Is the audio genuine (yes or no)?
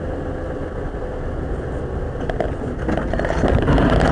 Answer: yes